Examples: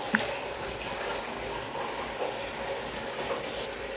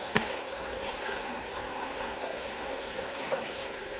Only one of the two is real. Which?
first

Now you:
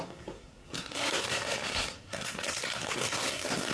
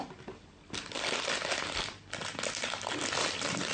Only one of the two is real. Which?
second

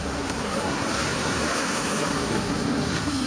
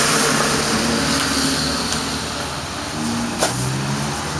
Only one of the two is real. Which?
second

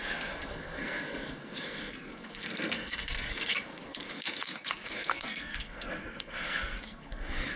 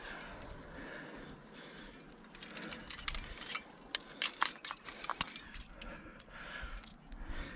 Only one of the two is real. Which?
second